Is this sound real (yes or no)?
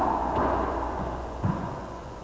no